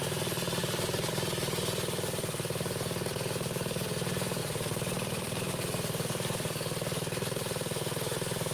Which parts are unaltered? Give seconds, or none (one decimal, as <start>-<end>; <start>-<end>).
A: 0.0-0.6; 1.1-4.4; 5.5-8.5